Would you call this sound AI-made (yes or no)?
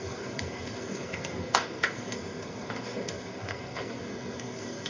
yes